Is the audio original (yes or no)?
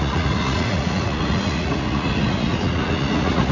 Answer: no